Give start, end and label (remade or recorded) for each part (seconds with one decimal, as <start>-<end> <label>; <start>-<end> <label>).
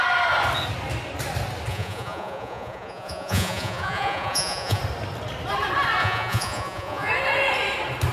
0.0-1.7 recorded; 1.7-4.8 remade; 4.8-6.0 recorded; 6.0-7.1 remade; 7.1-8.1 recorded